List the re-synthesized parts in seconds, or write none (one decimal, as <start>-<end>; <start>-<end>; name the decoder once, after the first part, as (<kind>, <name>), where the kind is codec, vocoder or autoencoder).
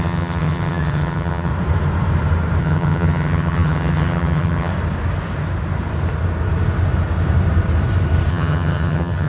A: 0.0-1.5 (vocoder, HiFi-GAN); 2.6-4.7; 8.3-9.3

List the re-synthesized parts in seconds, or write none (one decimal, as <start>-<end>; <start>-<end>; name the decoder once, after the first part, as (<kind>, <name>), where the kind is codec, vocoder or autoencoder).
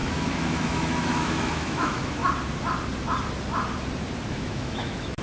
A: 0.0-2.2 (autoencoder, DAC-VAE); 4.3-5.2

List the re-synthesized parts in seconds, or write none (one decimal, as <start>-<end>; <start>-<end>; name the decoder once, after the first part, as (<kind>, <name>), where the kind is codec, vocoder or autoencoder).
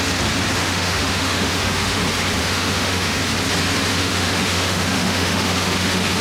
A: 0.6-2.0 (autoencoder, DAC-VAE); 2.4-3.2; 3.9-6.2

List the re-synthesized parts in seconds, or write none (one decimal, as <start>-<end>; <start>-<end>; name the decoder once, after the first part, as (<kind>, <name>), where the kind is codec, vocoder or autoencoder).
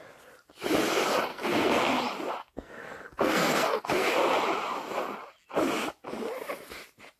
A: 1.3-2.0 (codec, SNAC); 2.4-4.1